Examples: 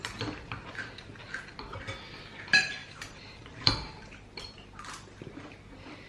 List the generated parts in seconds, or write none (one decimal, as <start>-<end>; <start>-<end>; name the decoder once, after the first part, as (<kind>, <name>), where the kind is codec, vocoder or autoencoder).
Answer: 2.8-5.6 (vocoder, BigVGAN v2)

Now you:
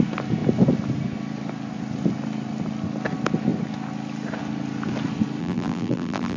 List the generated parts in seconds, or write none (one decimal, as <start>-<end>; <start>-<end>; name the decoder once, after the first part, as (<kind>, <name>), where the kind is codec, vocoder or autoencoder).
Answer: 5.4-6.4 (vocoder, BigVGAN v2)

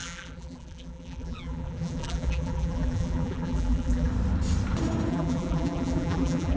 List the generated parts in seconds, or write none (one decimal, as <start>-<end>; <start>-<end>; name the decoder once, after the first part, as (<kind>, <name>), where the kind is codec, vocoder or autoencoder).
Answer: 0.0-4.1 (vocoder, BigVGAN v2); 5.1-6.6